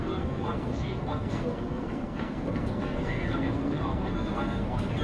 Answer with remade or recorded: remade